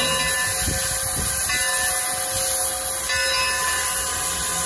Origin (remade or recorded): recorded